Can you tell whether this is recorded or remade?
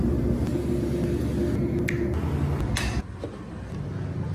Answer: recorded